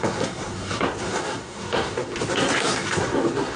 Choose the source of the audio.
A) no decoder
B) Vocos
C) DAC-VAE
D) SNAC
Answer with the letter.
D